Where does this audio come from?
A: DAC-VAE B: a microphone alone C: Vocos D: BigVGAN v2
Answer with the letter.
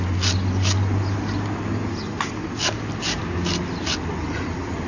B